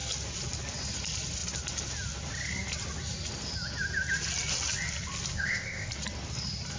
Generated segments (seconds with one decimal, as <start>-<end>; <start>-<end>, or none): 5.3-5.9